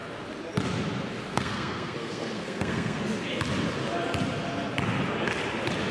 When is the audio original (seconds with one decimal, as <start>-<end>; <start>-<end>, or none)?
0.0-1.3; 3.0-5.9